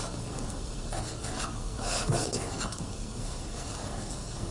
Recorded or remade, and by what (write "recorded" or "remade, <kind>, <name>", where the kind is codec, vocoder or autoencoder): remade, codec, SNAC